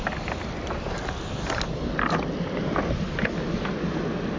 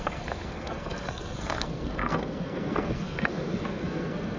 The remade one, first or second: second